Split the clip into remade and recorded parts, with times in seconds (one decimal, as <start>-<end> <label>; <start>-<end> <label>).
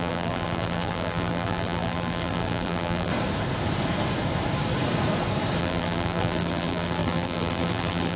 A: 0.0-3.1 remade; 3.1-5.6 recorded; 5.6-8.2 remade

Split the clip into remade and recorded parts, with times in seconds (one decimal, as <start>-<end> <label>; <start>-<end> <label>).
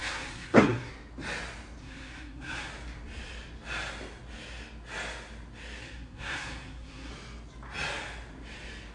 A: 0.0-0.9 remade; 0.9-1.8 recorded; 1.8-2.7 remade; 2.7-5.8 recorded; 5.8-7.1 remade; 7.1-8.9 recorded